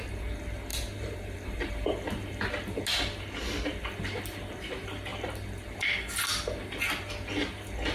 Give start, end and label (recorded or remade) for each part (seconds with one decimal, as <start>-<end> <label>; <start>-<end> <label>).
0.0-0.7 recorded; 0.7-2.5 remade; 2.5-7.9 recorded